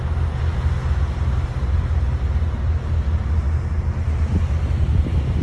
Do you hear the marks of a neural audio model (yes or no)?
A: no